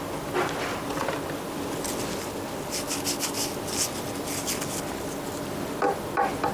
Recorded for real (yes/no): yes